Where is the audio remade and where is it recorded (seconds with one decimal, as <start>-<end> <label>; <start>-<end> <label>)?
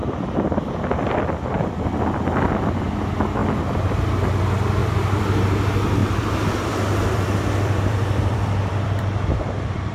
0.0-2.9 remade; 2.9-4.8 recorded; 4.8-5.3 remade; 5.3-6.0 recorded; 6.0-9.4 remade; 9.4-9.9 recorded